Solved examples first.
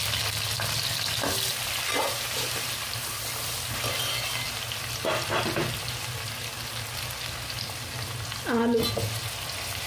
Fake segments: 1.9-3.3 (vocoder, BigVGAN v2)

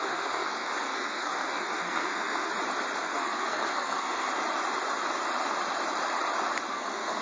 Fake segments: 0.0-2.5 (codec, SNAC); 3.0-4.3; 6.7-7.2

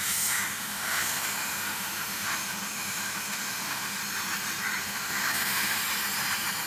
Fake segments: 0.0-4.0 (autoencoder, DAC-VAE); 4.8-5.8